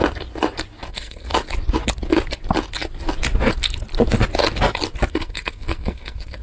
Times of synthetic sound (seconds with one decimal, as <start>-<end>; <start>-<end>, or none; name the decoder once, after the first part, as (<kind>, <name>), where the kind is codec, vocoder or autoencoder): 0.9-1.3 (codec, SNAC); 5.1-6.4